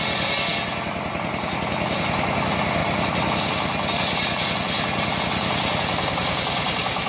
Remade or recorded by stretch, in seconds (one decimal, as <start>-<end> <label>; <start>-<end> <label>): 0.0-7.1 recorded